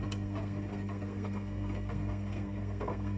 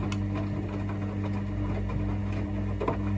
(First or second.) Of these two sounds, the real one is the second